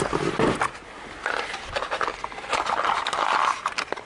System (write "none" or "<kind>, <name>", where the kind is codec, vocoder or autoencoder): none